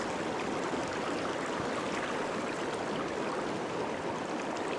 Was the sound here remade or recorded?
recorded